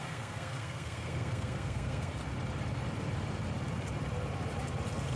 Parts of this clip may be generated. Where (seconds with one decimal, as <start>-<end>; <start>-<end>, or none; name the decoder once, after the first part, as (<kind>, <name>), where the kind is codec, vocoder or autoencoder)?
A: 0.0-2.1 (codec, SNAC)